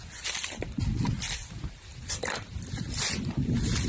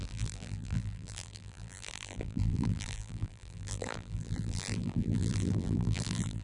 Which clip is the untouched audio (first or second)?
first